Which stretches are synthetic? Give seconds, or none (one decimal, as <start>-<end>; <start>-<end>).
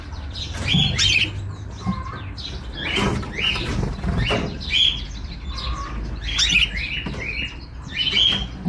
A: none